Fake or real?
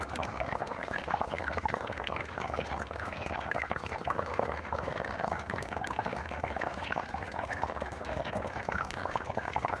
fake